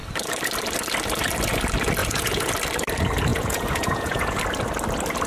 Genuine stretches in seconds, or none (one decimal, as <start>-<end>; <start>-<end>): 0.0-2.0; 2.5-3.3; 4.4-5.3